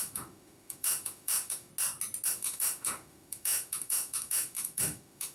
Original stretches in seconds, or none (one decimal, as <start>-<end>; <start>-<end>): 1.7-2.3